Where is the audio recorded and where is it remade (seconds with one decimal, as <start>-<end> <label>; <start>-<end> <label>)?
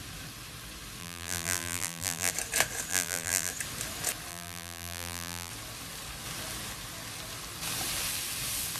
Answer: 0.0-1.0 recorded; 1.0-2.3 remade; 2.3-2.9 recorded; 2.9-3.5 remade; 3.5-4.3 recorded; 4.3-5.5 remade; 5.5-8.8 recorded